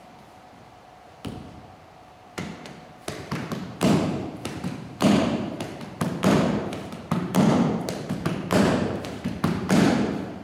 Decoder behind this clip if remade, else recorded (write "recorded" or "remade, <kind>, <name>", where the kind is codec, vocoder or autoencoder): remade, vocoder, BigVGAN v2